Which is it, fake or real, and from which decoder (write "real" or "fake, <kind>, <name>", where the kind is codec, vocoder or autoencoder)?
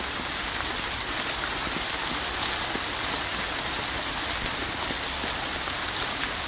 real